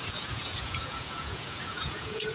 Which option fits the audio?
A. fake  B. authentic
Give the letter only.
A